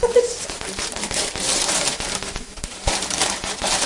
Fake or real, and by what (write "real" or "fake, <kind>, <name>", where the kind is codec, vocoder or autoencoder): fake, vocoder, BigVGAN v2